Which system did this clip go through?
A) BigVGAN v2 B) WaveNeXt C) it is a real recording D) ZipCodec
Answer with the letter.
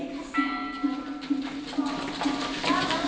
C